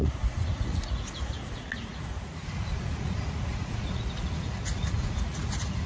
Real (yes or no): no